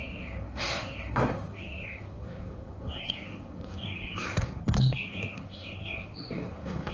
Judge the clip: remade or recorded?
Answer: remade